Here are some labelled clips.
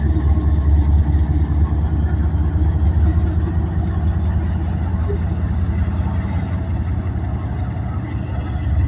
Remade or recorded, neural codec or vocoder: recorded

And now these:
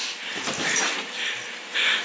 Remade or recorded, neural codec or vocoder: recorded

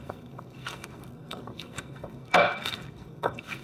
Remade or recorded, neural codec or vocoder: remade, codec, SNAC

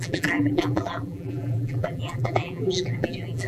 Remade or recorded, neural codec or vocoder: remade, vocoder, BigVGAN v2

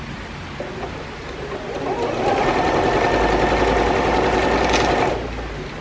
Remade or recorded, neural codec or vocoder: recorded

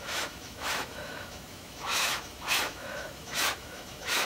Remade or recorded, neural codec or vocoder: remade, autoencoder, DAC-VAE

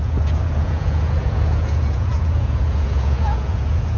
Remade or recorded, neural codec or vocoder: remade, vocoder, Vocos